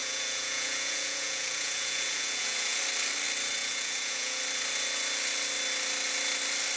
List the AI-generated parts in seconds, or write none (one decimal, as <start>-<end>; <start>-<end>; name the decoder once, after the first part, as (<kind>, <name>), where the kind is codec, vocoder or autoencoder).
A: 0.0-2.8 (vocoder, Vocos); 3.6-4.4